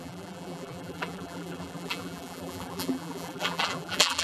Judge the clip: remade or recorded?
remade